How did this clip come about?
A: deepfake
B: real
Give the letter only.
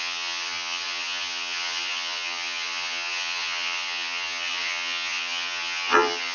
A